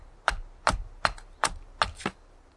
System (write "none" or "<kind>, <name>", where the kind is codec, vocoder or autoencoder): none